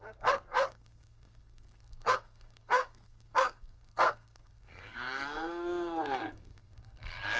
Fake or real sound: fake